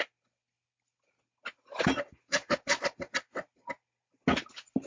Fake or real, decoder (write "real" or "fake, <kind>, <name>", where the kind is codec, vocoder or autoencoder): real